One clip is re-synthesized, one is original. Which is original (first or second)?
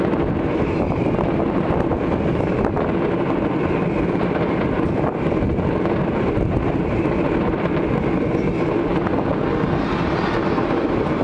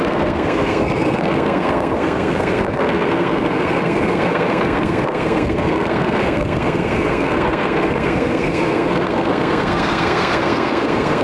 first